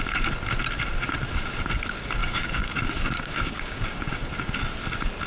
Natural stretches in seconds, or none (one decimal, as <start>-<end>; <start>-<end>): 0.0-2.2; 4.2-5.3